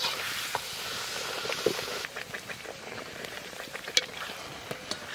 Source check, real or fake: real